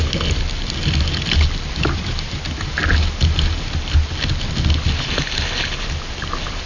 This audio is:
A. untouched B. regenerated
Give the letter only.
A